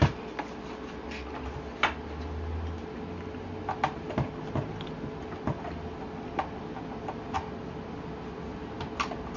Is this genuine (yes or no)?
yes